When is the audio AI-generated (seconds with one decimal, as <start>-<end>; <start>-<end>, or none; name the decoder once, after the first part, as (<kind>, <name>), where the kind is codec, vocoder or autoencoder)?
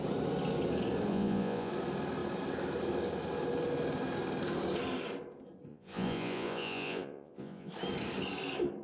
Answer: 1.1-1.7 (vocoder, Vocos); 5.7-7.7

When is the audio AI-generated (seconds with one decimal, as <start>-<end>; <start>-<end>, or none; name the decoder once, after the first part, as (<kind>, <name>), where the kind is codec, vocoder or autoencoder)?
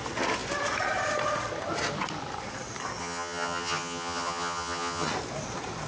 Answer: 3.0-5.1 (vocoder, HiFi-GAN)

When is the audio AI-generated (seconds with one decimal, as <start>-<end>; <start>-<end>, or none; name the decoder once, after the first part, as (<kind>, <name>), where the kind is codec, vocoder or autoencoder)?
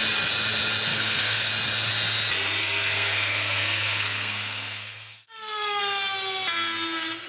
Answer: 0.9-1.5 (codec, SNAC); 2.6-5.8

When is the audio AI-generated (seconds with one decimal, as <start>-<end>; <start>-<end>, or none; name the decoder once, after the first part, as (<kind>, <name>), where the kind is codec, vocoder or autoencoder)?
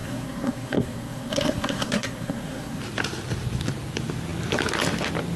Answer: 0.0-2.8 (codec, SNAC)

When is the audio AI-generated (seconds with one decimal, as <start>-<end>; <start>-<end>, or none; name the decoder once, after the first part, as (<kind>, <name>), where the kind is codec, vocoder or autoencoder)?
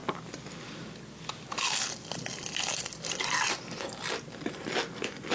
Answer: none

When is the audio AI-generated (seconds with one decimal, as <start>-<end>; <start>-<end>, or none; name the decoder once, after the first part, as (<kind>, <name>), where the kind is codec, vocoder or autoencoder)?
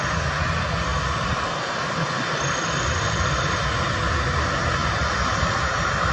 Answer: none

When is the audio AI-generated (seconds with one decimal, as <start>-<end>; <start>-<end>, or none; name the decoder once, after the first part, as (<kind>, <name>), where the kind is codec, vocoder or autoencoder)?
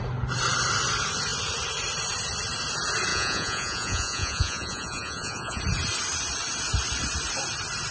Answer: 3.1-5.6 (vocoder, Vocos)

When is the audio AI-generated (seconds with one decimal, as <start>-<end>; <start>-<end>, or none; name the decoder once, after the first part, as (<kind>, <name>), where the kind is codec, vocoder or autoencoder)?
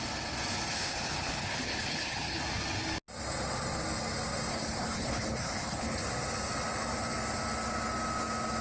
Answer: 0.7-2.4 (codec, HILCodec); 4.5-6.0